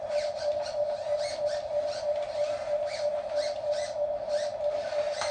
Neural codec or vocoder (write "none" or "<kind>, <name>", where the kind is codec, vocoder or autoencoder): none